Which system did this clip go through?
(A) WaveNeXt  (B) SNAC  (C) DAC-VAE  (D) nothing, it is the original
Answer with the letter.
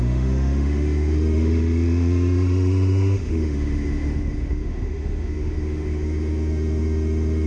C